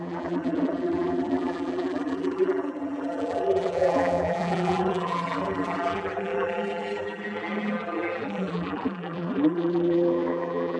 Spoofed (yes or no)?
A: yes